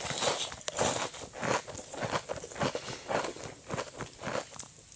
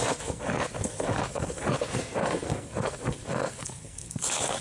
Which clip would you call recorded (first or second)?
first